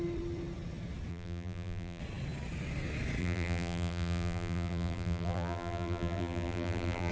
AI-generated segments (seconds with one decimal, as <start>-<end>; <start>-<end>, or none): 1.1-2.0; 3.2-7.1